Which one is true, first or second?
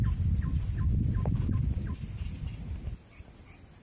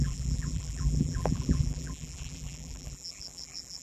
first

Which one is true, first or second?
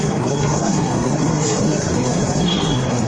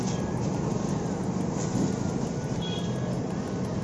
second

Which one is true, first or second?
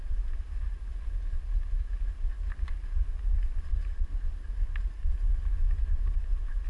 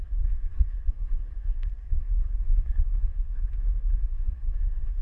first